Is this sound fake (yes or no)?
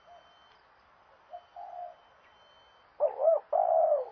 no